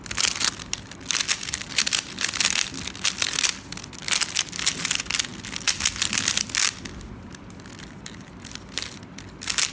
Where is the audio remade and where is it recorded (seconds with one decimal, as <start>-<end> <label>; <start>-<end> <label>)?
0.0-9.7 recorded